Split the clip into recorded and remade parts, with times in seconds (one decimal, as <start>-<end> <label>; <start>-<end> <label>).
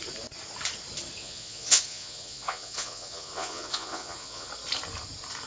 0.0-1.2 recorded; 1.2-4.5 remade; 4.5-5.5 recorded